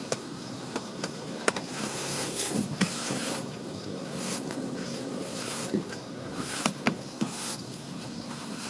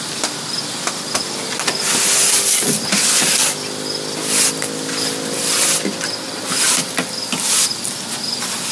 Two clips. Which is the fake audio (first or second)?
first